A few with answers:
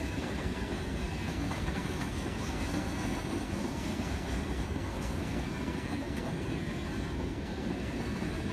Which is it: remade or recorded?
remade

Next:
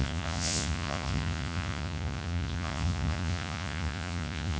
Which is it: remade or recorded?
remade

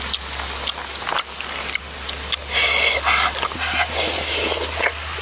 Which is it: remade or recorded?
recorded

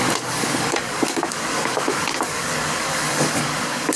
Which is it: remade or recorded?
remade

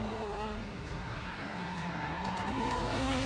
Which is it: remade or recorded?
remade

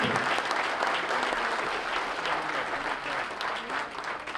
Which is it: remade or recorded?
recorded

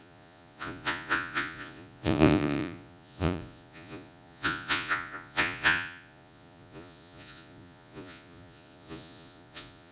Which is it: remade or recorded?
remade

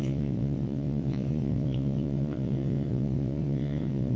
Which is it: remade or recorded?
remade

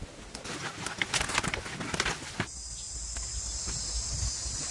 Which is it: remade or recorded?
recorded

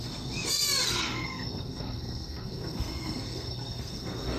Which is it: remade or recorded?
remade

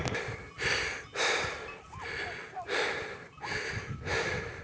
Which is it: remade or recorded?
recorded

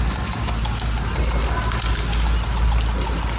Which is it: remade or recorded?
recorded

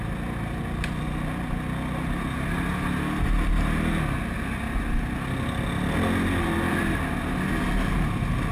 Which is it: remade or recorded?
recorded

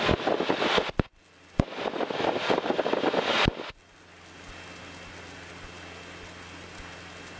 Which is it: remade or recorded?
recorded